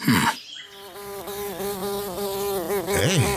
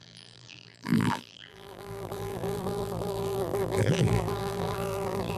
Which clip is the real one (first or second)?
first